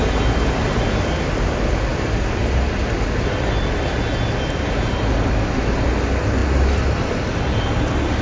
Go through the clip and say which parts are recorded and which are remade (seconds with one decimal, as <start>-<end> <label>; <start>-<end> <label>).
0.0-8.2 recorded